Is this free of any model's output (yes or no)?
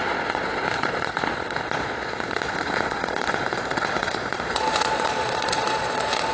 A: no